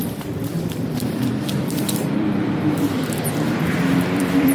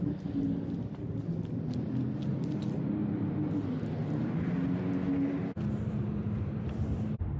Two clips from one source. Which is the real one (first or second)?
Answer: second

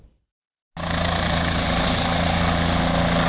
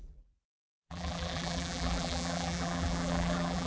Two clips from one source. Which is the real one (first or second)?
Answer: first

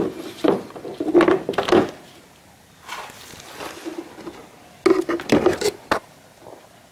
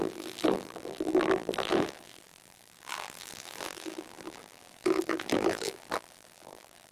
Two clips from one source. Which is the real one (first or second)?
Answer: first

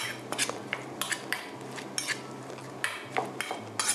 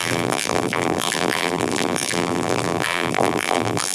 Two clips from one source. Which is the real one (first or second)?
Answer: first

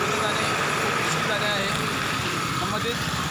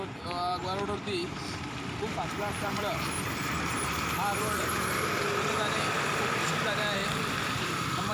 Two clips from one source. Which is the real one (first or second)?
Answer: first